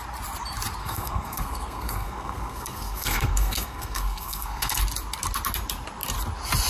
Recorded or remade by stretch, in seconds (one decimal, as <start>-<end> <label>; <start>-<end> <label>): 0.0-0.8 recorded; 0.8-4.8 remade; 4.8-6.7 recorded

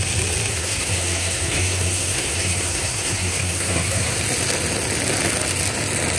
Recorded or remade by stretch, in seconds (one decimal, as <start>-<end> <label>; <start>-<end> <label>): 0.0-0.5 recorded; 0.5-4.2 remade; 4.2-6.2 recorded

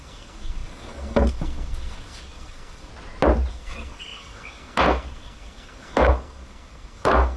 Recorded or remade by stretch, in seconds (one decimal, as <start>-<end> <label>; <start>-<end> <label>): 0.0-2.9 remade; 2.9-3.5 recorded; 3.5-7.4 remade

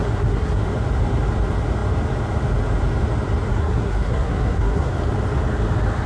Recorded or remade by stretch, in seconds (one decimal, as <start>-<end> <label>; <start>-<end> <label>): 0.0-0.6 remade; 0.6-3.5 recorded; 3.5-4.9 remade; 4.9-6.1 recorded

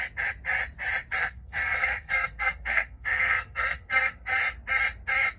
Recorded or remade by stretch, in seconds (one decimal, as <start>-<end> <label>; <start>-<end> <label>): 0.0-1.2 recorded; 1.2-4.4 remade; 4.4-5.4 recorded